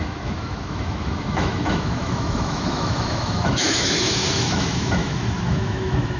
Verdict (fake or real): fake